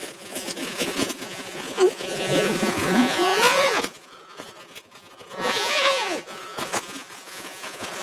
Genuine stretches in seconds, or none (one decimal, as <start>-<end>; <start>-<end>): none